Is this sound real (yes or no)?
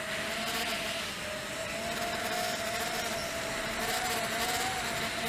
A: yes